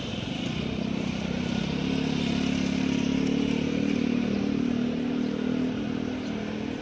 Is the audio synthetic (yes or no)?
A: no